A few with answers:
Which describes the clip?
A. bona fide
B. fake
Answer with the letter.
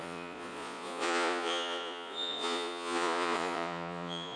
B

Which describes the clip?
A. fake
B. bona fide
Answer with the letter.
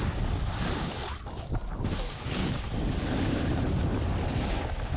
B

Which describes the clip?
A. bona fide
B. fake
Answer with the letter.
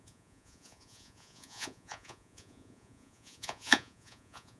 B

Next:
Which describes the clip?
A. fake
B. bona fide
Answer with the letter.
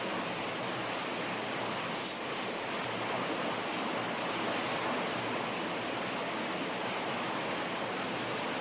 B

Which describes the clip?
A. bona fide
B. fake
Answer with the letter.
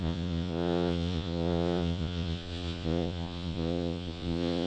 B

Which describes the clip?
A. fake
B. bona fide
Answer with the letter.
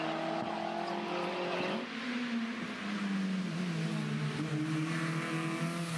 B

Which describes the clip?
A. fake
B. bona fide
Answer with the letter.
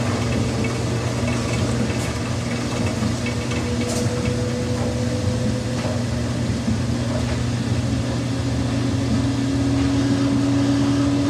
B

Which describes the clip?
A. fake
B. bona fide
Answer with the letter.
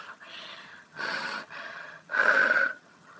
A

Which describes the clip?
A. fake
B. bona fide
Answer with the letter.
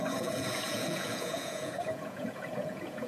A